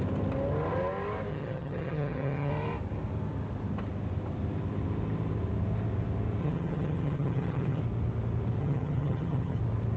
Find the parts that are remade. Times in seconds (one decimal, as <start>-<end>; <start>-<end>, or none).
1.3-2.5; 6.4-7.8; 8.6-9.6